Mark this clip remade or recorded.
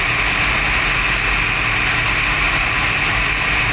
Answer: recorded